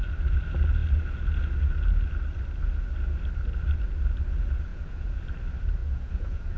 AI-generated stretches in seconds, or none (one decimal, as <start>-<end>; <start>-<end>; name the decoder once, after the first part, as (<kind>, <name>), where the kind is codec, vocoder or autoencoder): 4.7-5.2 (vocoder, Vocos); 5.8-6.6